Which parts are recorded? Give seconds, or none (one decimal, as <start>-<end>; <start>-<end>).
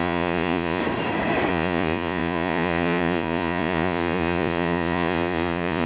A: 0.8-1.5